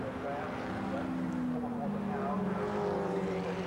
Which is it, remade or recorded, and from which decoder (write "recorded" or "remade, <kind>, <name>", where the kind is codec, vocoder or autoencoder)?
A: recorded